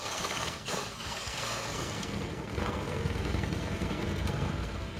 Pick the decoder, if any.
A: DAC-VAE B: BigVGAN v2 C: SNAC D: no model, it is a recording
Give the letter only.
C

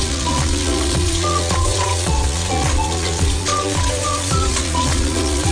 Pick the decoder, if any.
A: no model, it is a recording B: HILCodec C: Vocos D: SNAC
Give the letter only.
C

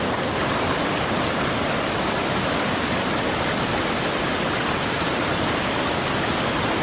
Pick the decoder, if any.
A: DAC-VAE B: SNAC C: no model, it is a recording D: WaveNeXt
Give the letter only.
C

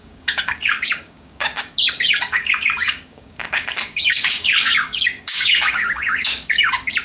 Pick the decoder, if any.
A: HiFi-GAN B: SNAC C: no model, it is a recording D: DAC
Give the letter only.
D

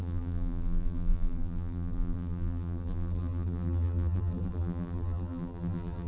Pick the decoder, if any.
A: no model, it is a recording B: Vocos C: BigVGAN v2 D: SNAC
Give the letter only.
C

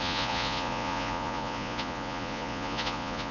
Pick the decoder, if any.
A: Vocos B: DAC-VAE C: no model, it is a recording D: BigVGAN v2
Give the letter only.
A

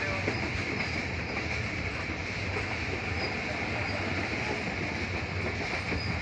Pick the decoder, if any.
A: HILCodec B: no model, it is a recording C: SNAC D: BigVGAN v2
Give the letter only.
B